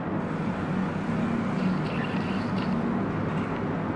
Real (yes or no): yes